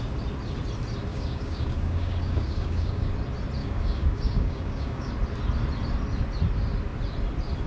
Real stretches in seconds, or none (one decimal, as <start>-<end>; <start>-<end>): 0.0-1.1; 3.1-3.6; 5.1-7.7